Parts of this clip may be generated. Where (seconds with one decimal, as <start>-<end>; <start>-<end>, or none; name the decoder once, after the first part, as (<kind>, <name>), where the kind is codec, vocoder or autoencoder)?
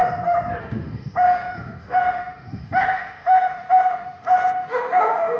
0.6-5.4 (autoencoder, DAC-VAE)